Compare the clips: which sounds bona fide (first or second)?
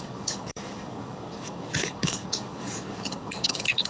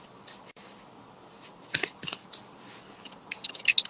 second